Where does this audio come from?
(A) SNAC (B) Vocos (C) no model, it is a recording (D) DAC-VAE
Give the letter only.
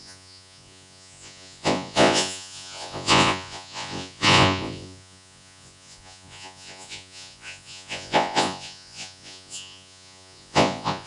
B